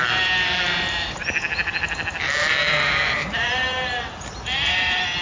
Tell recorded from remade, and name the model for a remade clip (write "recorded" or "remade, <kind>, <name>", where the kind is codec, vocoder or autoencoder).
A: remade, vocoder, BigVGAN v2